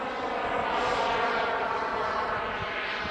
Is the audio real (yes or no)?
yes